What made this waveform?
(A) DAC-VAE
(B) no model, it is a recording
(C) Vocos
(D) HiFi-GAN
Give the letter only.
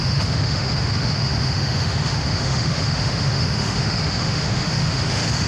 A